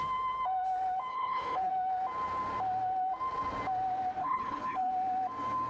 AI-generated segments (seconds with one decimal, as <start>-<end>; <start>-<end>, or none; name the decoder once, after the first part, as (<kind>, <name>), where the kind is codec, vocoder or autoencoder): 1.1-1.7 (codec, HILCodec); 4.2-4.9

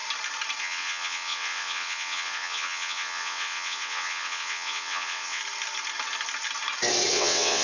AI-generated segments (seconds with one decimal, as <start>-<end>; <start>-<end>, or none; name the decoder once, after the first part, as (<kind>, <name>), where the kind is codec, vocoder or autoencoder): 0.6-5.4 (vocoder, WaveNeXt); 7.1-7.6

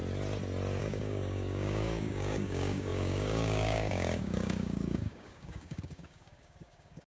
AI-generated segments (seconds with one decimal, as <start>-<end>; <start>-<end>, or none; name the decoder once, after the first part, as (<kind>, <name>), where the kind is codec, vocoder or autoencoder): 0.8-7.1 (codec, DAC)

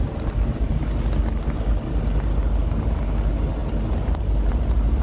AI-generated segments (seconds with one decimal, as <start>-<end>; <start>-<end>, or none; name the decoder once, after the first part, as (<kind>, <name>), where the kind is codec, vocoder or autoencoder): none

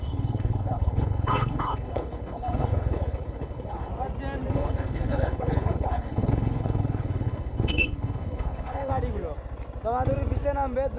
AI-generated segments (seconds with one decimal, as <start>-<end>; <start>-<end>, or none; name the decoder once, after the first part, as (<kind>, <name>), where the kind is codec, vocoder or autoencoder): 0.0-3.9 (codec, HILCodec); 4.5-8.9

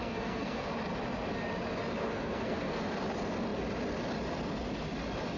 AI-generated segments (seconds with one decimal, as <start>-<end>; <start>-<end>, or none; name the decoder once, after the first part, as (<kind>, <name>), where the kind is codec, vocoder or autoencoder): 0.0-0.7 (codec, SNAC); 2.0-2.8

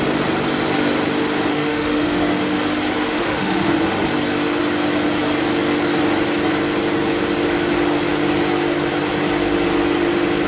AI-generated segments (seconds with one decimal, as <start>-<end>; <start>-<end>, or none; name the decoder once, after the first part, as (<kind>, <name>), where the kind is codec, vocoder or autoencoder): 1.5-2.2 (autoencoder, DAC-VAE); 3.1-3.7

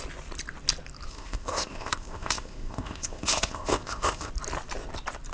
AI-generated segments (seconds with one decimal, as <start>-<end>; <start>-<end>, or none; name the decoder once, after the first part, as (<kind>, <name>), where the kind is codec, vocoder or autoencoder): 1.1-4.3 (codec, ZipCodec)